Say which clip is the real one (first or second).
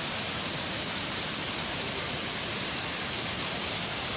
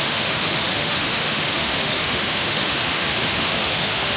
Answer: first